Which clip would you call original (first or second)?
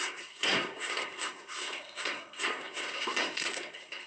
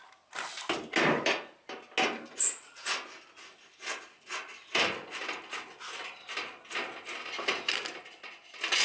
second